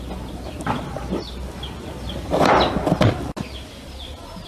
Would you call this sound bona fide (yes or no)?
yes